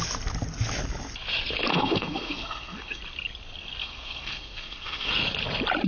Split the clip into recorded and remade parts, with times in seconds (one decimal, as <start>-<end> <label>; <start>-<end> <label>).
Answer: 0.0-1.7 recorded; 1.7-3.0 remade; 3.0-3.8 recorded; 3.8-5.1 remade; 5.1-5.9 recorded